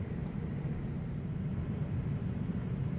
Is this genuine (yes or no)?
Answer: no